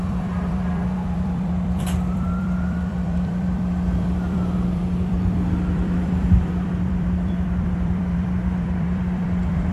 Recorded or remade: remade